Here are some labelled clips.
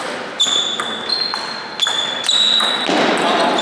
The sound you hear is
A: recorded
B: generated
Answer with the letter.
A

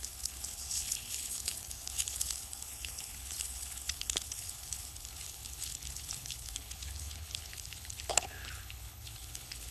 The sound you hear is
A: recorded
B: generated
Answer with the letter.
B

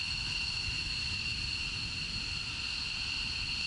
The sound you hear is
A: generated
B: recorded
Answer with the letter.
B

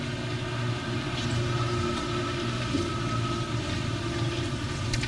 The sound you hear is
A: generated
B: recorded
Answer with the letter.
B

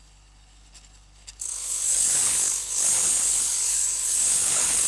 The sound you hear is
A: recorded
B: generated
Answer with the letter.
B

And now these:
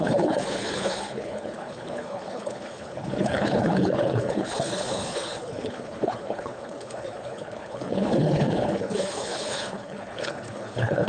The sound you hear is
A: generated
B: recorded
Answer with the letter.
A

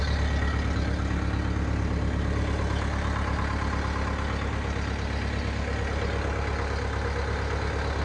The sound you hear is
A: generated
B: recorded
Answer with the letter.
B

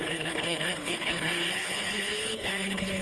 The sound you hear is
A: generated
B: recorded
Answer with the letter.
A